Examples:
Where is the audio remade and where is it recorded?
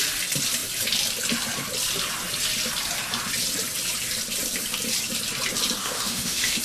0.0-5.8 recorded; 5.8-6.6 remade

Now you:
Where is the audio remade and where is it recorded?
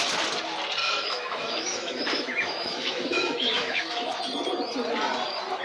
0.0-0.8 recorded; 0.8-4.2 remade; 4.2-5.6 recorded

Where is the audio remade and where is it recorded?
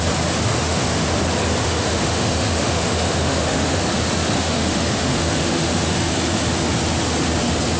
0.0-0.5 recorded; 0.5-1.2 remade; 1.2-1.6 recorded; 1.6-3.8 remade; 3.8-4.4 recorded; 4.4-6.1 remade; 6.1-7.8 recorded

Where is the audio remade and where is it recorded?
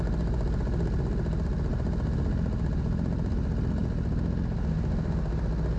0.0-5.8 recorded